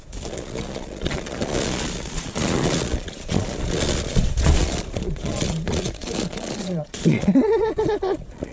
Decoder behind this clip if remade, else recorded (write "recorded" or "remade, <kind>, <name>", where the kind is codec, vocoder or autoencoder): remade, vocoder, Vocos